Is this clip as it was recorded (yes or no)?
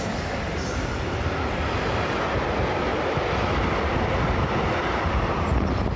yes